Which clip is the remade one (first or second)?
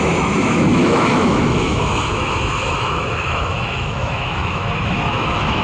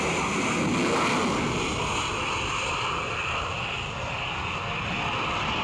first